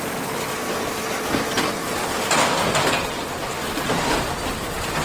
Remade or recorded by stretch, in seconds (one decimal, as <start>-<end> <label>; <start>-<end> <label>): 0.0-1.8 recorded; 1.8-3.2 remade; 3.2-5.0 recorded

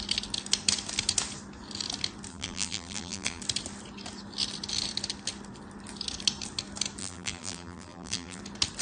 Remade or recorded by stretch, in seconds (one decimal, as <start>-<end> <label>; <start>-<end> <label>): 0.0-2.3 recorded; 2.3-3.4 remade; 3.4-7.0 recorded; 7.0-8.4 remade; 8.4-8.8 recorded

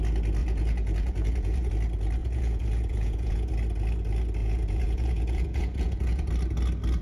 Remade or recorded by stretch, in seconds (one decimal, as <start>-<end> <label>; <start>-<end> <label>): 0.0-0.4 recorded; 0.4-1.7 remade; 1.7-2.2 recorded; 2.2-3.5 remade; 3.5-4.4 recorded; 4.4-6.3 remade; 6.3-7.0 recorded

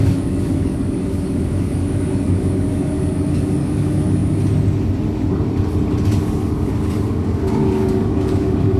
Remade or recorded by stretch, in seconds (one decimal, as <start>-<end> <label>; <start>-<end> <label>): 0.0-4.2 remade; 4.2-6.2 recorded; 6.2-8.8 remade